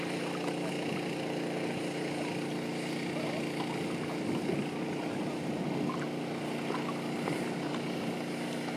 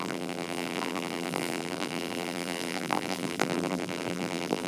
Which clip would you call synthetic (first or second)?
second